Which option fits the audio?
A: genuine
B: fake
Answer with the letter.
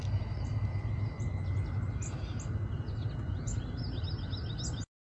A